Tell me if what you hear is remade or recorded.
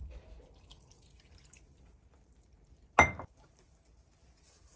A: recorded